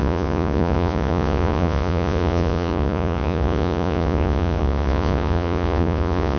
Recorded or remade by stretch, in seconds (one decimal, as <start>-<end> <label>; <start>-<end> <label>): 0.0-6.4 remade